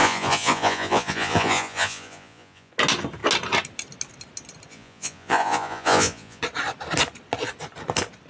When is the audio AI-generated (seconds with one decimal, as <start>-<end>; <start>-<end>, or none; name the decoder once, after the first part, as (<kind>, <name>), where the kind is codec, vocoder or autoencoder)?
0.0-2.7 (vocoder, Vocos); 4.7-6.4